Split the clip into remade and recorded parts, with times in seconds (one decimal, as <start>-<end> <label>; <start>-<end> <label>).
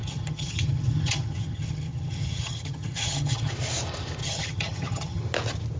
0.0-3.5 remade; 3.5-4.2 recorded; 4.2-5.2 remade; 5.2-5.8 recorded